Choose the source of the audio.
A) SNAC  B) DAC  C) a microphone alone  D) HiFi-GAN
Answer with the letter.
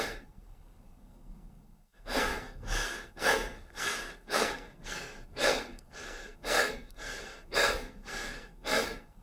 A